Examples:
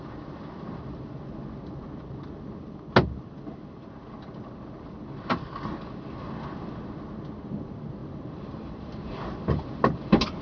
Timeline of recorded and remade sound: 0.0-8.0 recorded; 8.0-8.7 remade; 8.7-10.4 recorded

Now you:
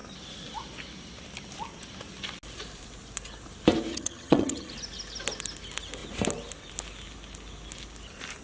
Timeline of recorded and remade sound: 0.0-3.9 recorded; 3.9-4.7 remade; 4.7-8.4 recorded